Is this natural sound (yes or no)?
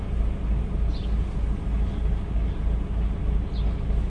yes